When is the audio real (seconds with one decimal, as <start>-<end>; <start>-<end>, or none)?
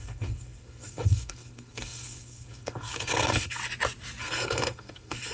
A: 3.6-4.2